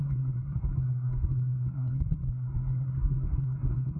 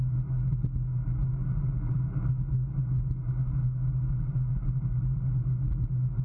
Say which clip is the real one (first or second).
second